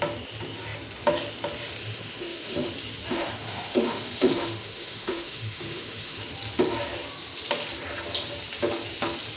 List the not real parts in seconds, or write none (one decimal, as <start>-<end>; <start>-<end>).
1.8-2.7; 3.1-6.2